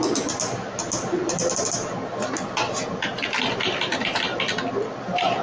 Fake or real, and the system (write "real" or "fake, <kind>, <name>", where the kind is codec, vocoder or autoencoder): real